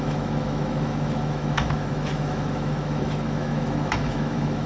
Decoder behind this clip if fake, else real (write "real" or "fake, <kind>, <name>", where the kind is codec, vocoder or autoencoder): fake, autoencoder, DAC-VAE